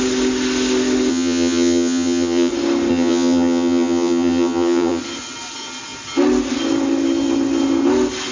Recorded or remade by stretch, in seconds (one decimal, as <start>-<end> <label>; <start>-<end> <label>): 0.0-1.1 recorded; 1.1-2.5 remade; 2.5-2.9 recorded; 2.9-5.0 remade; 5.0-8.3 recorded